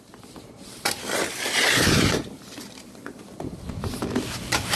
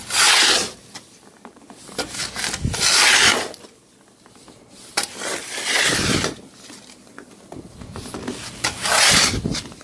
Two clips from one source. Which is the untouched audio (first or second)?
second